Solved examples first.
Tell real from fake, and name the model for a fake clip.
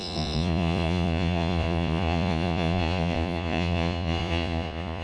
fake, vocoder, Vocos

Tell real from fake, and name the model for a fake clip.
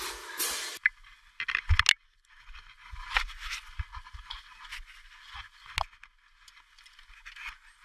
real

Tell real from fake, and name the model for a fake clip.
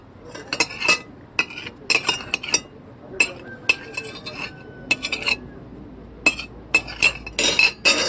real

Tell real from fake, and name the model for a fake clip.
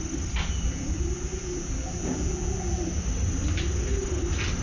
real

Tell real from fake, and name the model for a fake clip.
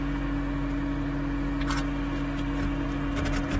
real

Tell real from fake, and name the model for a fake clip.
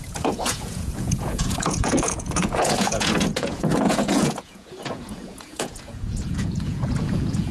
fake, vocoder, Vocos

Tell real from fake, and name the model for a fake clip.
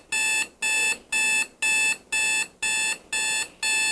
real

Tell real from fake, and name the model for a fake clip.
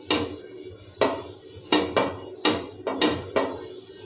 real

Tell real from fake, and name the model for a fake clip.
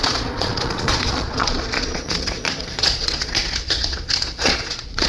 fake, vocoder, Vocos